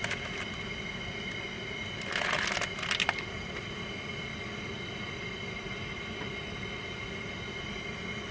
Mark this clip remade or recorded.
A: recorded